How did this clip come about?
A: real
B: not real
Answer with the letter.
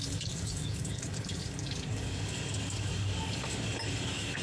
B